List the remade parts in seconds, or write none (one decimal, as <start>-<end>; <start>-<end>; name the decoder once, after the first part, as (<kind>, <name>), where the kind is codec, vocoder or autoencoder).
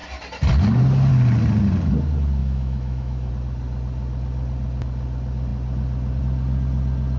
2.4-3.3 (autoencoder, DAC-VAE)